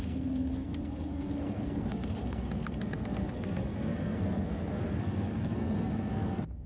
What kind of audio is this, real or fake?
fake